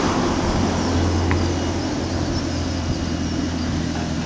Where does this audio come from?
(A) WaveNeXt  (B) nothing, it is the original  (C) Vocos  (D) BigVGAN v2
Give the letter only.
B